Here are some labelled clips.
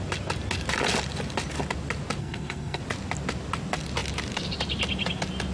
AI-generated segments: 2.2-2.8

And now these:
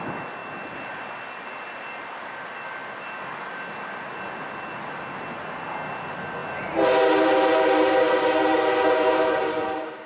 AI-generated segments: none

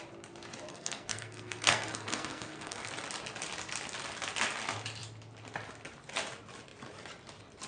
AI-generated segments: 0.7-2.9

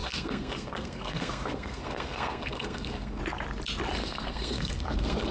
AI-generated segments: 0.0-3.2; 4.0-5.3

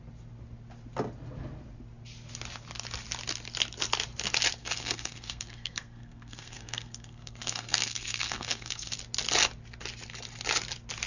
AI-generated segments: 4.6-8.9

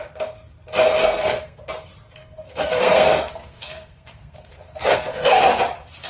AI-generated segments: 1.0-1.6; 2.2-5.4

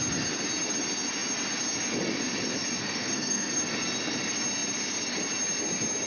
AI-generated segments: 2.8-3.6

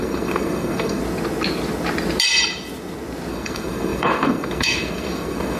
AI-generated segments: 0.0-1.0; 3.3-5.6